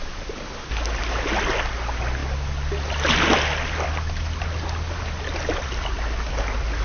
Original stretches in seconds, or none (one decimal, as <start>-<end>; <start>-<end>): 0.0-6.8